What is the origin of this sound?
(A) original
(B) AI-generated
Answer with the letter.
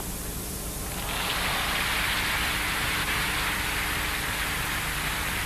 A